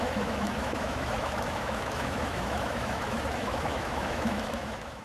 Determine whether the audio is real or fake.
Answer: fake